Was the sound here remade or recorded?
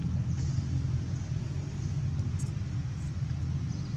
recorded